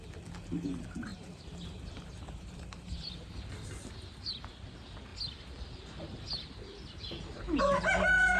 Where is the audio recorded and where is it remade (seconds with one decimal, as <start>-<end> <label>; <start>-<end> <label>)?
0.0-1.1 recorded; 1.1-3.5 remade; 3.5-8.4 recorded